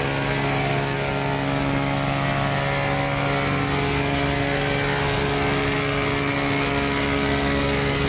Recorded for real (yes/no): yes